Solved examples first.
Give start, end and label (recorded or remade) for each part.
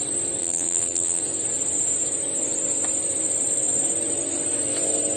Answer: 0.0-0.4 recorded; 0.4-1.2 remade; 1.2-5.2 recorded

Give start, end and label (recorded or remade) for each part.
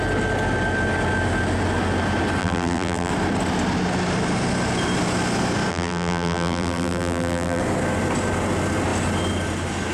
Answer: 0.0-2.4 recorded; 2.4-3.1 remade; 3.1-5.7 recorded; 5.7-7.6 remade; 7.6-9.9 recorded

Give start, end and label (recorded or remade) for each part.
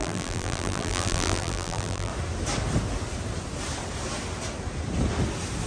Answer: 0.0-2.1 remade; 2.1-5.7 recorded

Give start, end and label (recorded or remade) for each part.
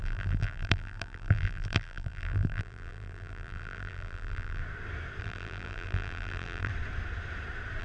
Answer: 0.0-4.6 remade; 4.6-5.2 recorded; 5.2-6.7 remade; 6.7-7.8 recorded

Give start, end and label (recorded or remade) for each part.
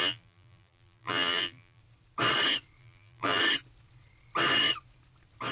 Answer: 0.0-1.8 remade; 1.8-2.8 recorded; 2.8-3.4 remade; 3.4-5.5 recorded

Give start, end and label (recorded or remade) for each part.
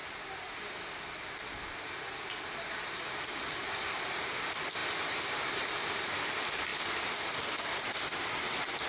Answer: 0.0-2.9 recorded; 2.9-4.8 remade; 4.8-5.5 recorded; 5.5-6.7 remade; 6.7-7.2 recorded; 7.2-8.9 remade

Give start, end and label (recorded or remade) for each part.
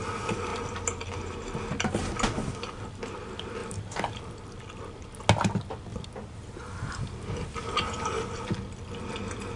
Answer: 0.0-3.6 recorded; 3.6-4.2 remade; 4.2-9.6 recorded